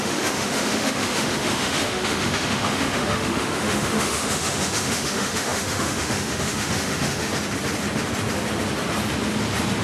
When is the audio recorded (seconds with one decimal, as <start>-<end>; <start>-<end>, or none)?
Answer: 7.3-9.8